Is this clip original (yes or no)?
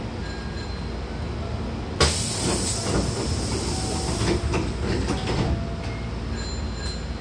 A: yes